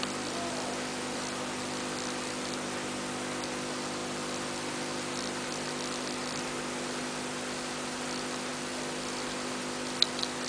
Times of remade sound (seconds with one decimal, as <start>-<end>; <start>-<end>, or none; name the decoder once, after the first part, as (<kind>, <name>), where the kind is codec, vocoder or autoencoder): none